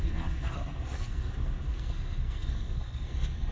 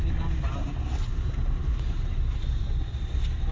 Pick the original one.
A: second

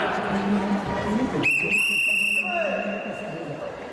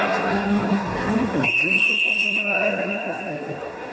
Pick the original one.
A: first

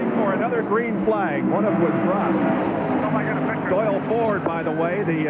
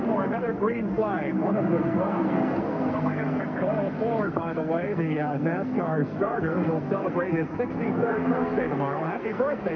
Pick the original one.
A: first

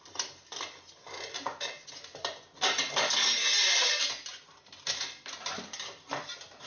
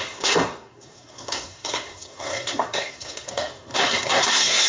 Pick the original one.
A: first